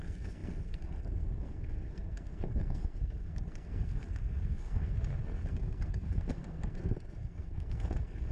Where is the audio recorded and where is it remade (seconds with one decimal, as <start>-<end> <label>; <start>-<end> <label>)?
0.0-8.3 remade